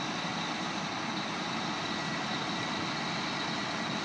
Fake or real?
real